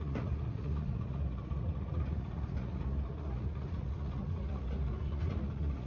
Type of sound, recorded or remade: remade